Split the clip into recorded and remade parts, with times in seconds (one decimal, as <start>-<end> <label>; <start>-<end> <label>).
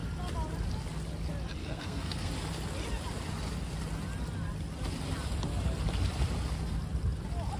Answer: 0.0-1.6 recorded; 1.6-2.3 remade; 2.3-7.6 recorded